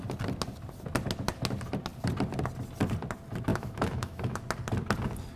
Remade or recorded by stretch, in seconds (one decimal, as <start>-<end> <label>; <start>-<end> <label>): 0.0-3.5 recorded; 3.5-4.4 remade; 4.4-5.4 recorded